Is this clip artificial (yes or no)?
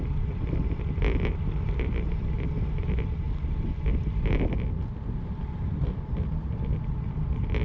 no